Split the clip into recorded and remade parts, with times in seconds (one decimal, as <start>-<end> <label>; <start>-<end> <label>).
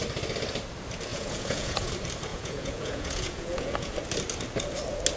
0.0-1.1 recorded; 1.1-1.9 remade; 1.9-2.3 recorded; 2.3-3.9 remade; 3.9-5.2 recorded